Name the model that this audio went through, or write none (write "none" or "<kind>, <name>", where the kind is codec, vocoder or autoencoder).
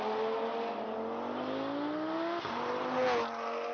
none